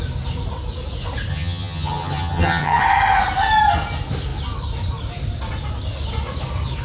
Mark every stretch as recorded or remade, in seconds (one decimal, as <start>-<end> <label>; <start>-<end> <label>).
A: 0.0-1.3 recorded; 1.3-2.8 remade; 2.8-6.8 recorded